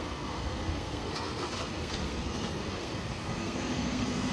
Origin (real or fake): fake